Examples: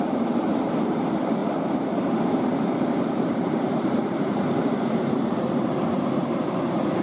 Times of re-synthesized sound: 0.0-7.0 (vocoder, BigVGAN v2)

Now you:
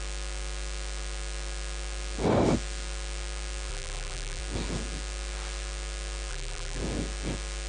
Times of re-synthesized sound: 3.7-4.4 (vocoder, BigVGAN v2); 6.3-6.8

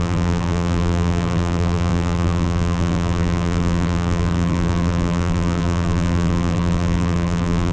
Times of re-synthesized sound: 0.0-7.7 (vocoder, BigVGAN v2)